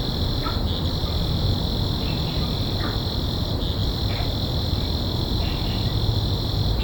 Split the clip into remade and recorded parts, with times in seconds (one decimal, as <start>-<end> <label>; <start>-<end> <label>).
0.0-6.8 recorded